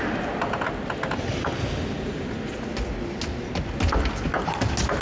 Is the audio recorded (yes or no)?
yes